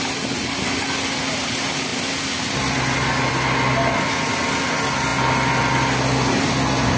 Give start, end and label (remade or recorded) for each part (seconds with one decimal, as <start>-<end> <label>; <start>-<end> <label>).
0.0-7.0 recorded